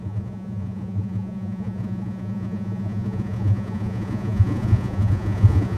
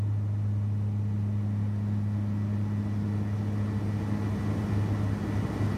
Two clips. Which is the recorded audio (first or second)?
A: second